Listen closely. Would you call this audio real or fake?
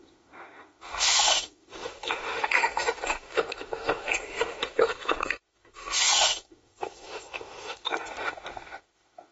fake